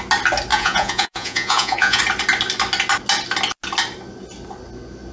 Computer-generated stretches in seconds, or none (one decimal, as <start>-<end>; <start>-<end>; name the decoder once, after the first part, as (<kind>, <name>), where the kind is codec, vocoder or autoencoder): 0.5-2.0 (vocoder, Vocos)